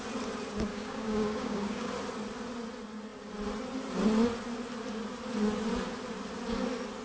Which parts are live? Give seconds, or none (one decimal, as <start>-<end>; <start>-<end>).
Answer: 0.0-0.7; 1.9-7.0